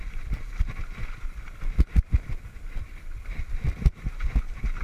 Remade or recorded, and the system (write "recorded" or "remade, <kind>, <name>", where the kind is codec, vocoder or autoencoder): recorded